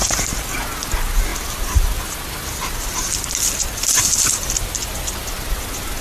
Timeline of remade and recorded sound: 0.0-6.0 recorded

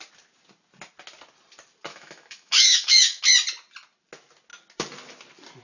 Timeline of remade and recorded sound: 0.0-1.9 recorded; 1.9-3.2 remade; 3.2-5.6 recorded

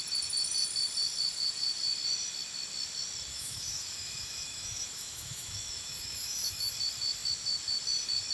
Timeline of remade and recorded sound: 0.0-3.3 recorded; 3.3-6.7 remade; 6.7-8.3 recorded

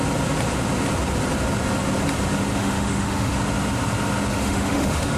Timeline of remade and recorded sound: 0.0-2.6 recorded; 2.6-3.3 remade; 3.3-4.3 recorded; 4.3-5.2 remade

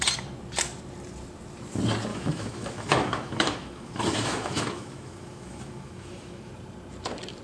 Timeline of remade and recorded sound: 0.0-2.1 recorded; 2.1-6.5 remade; 6.5-7.4 recorded

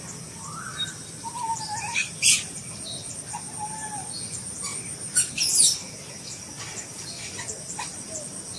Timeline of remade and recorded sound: 0.0-8.6 recorded